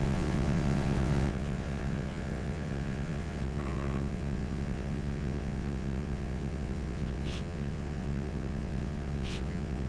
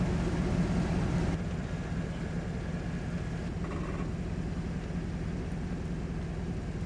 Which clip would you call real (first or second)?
second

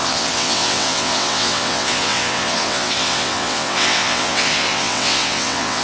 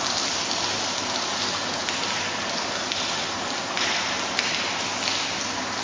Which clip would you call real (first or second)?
second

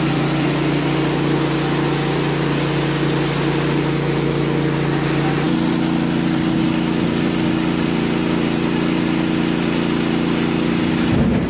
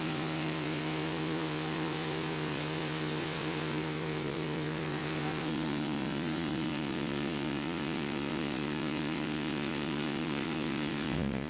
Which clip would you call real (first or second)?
first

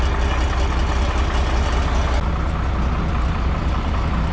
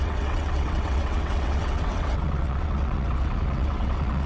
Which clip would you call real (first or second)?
first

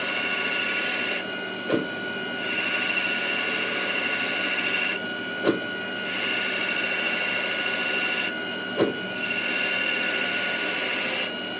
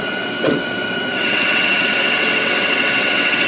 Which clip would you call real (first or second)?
first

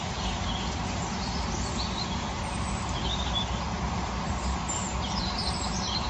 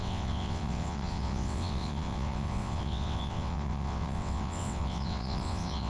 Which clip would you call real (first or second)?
first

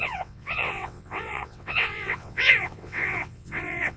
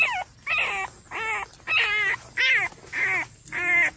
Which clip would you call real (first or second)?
second